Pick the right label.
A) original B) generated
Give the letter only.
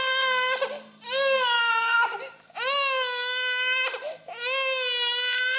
A